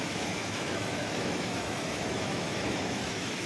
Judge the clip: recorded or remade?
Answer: remade